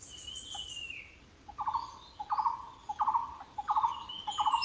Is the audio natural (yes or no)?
yes